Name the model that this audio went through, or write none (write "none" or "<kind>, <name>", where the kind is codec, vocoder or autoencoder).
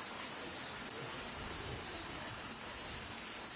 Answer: none